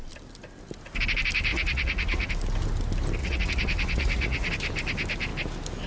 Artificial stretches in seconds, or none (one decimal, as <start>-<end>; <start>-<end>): 1.5-2.3; 3.2-4.5